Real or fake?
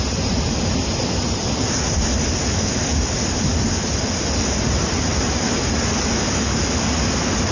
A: real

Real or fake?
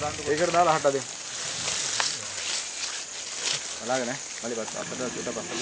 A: real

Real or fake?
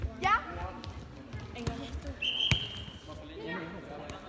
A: real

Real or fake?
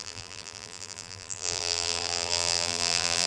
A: fake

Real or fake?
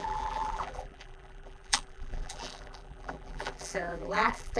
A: fake